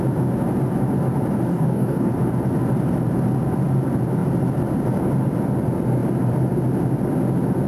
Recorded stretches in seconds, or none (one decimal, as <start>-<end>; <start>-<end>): 0.0-1.5; 2.1-7.7

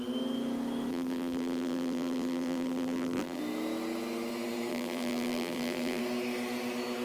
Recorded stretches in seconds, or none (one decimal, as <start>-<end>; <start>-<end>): 0.0-0.9; 3.4-4.7; 6.0-7.0

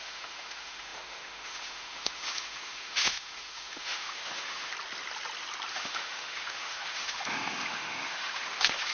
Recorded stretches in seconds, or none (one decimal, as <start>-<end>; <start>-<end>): 4.7-5.7

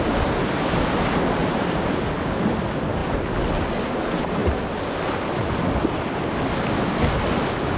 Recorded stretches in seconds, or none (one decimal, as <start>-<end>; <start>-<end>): 0.0-1.4; 2.1-7.8